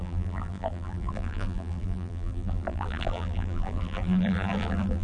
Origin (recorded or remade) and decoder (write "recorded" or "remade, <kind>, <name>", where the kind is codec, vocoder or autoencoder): remade, vocoder, BigVGAN v2